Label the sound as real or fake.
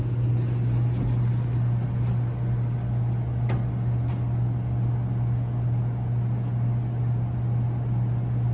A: real